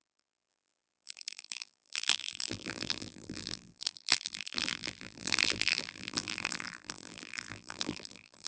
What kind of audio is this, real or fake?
fake